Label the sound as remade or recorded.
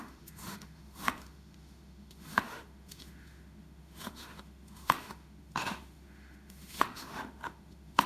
remade